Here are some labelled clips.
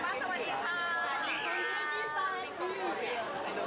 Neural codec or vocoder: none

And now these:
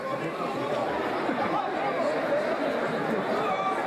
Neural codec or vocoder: none